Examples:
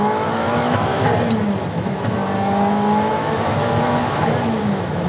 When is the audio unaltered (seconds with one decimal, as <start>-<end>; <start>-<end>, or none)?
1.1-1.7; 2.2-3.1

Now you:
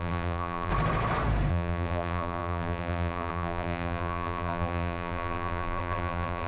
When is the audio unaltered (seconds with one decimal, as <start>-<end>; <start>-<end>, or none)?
0.7-1.5

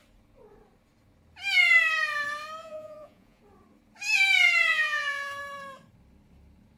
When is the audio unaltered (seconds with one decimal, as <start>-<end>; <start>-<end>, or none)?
0.0-2.6; 3.4-4.7; 5.4-6.8

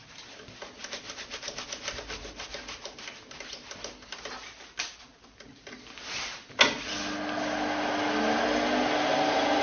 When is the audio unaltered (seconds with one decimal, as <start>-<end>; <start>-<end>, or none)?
0.0-9.6